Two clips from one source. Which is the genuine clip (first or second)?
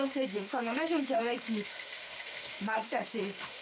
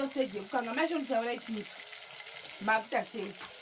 second